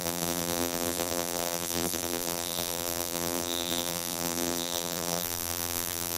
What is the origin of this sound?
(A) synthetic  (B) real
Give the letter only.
A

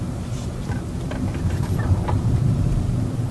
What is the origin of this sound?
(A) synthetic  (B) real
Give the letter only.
A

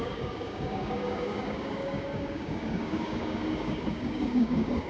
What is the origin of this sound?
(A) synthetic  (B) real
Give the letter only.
A